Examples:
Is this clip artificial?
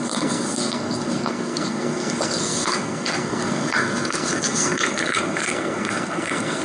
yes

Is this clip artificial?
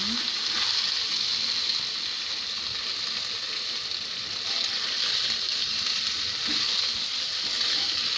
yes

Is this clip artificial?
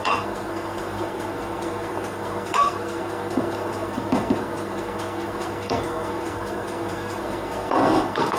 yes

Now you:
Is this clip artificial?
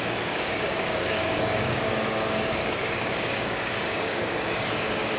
yes